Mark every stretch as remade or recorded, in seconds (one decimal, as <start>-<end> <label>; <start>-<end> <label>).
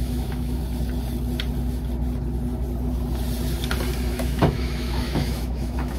0.0-0.6 remade; 0.6-4.1 recorded; 4.1-6.0 remade